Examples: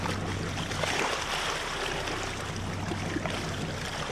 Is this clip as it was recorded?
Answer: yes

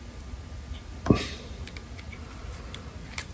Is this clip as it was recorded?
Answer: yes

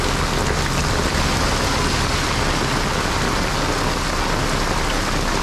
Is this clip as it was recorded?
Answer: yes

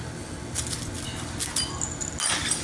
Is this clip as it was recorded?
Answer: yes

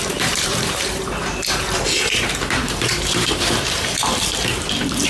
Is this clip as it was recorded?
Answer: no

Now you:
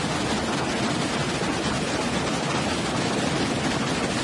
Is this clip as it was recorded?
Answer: yes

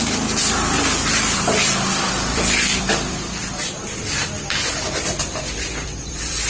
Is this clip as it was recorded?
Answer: no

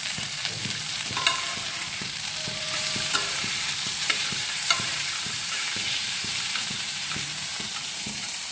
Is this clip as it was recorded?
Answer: no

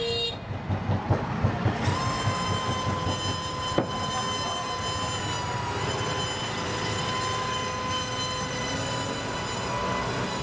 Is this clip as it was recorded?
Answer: yes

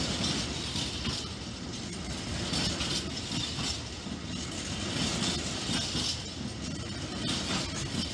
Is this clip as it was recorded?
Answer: yes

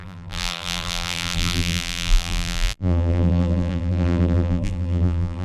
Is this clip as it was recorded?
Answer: no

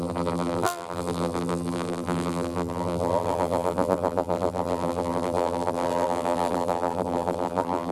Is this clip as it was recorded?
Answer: no